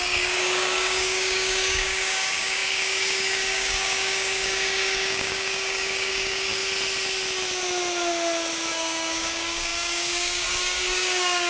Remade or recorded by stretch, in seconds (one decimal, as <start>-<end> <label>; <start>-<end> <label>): 0.0-6.6 remade; 6.6-8.7 recorded; 8.7-11.5 remade